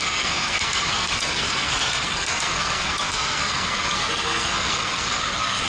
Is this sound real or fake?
fake